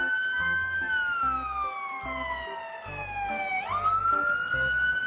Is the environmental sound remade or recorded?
recorded